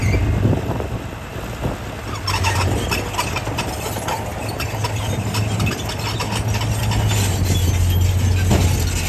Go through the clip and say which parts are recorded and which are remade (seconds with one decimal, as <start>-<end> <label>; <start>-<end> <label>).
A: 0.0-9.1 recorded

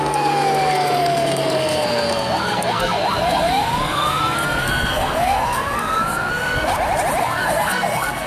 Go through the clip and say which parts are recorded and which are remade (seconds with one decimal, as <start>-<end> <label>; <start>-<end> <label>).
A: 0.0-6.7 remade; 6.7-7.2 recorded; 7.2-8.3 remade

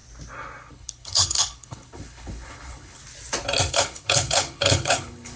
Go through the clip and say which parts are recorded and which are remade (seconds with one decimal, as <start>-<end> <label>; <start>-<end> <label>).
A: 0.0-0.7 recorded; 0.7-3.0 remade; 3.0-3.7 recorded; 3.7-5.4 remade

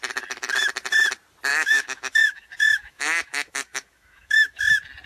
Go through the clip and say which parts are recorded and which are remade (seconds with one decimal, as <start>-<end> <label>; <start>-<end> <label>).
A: 0.0-1.5 recorded; 1.5-4.6 remade; 4.6-5.1 recorded

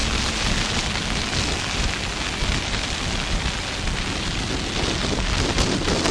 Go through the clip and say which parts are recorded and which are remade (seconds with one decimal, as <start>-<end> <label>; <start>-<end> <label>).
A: 0.0-6.1 recorded

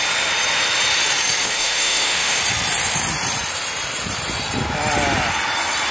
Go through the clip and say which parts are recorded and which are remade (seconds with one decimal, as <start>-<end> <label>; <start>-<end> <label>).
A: 0.0-1.4 recorded; 1.4-2.4 remade; 2.4-5.9 recorded

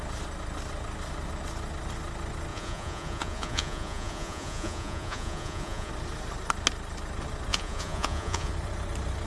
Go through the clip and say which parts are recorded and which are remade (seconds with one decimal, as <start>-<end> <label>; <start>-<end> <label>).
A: 0.0-2.5 recorded; 2.5-5.9 remade; 5.9-7.5 recorded; 7.5-8.5 remade; 8.5-9.3 recorded